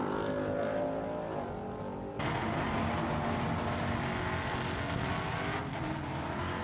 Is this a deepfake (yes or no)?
no